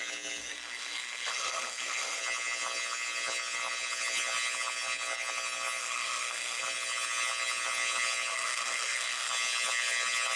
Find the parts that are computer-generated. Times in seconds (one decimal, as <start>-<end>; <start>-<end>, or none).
0.4-2.2; 5.8-6.6; 8.3-9.3